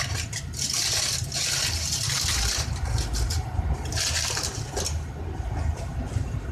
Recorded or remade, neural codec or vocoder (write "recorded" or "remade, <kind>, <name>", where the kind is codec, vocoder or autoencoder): recorded